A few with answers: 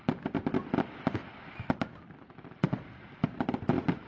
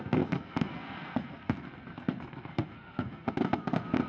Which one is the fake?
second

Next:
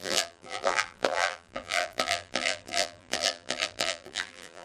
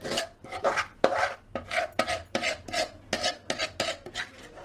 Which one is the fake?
first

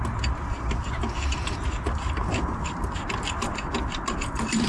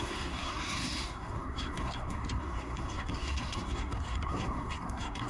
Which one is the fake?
second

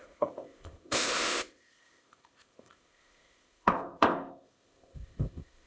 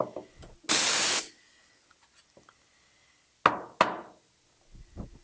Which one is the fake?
first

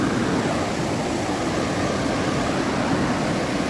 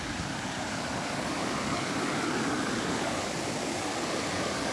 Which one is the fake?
second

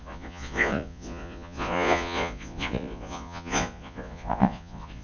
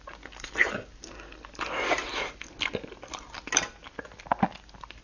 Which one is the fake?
first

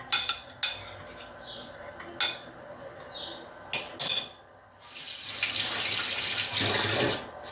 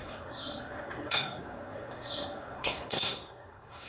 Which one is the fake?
second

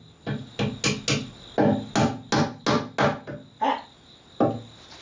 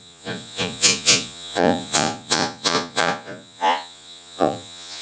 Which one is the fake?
second